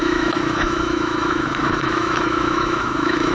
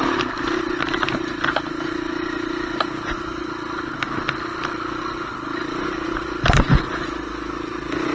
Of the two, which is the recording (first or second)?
second